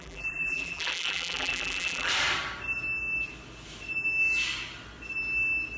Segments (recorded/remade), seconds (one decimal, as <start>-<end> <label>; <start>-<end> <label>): 0.0-2.1 remade; 2.1-5.8 recorded